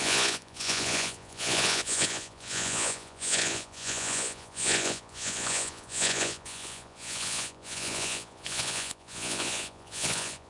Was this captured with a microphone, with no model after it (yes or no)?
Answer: no